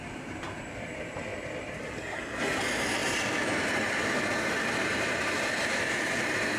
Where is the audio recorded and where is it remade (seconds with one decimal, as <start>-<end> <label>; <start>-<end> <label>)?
0.0-6.6 remade